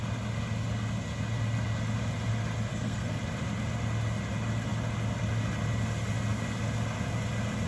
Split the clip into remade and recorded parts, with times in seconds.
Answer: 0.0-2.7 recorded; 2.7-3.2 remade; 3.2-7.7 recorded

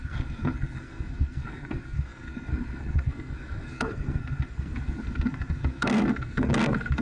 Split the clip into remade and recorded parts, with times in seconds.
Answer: 0.0-7.0 remade

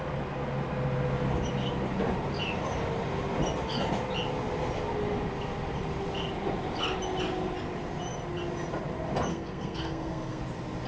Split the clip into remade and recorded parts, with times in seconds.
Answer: 0.0-9.3 recorded; 9.3-10.4 remade; 10.4-10.9 recorded

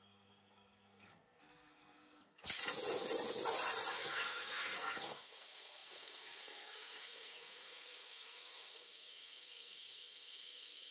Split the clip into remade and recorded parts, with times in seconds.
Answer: 0.0-2.4 remade; 2.4-3.9 recorded; 3.9-10.9 remade

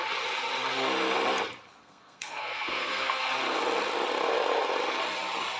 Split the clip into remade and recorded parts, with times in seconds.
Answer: 0.0-1.8 recorded; 1.8-3.3 remade; 3.3-5.6 recorded

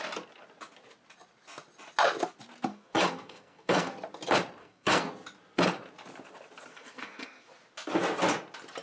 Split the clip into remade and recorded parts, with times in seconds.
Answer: 0.0-2.7 recorded; 2.7-3.9 remade; 3.9-4.6 recorded; 4.6-5.1 remade; 5.1-6.7 recorded; 6.7-7.5 remade; 7.5-8.8 recorded